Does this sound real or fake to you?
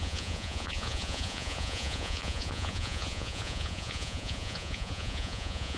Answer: fake